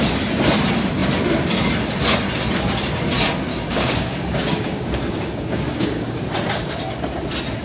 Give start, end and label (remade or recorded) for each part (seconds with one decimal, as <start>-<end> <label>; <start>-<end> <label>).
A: 0.0-3.5 recorded; 3.5-6.2 remade; 6.2-7.6 recorded